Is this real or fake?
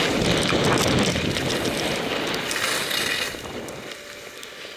real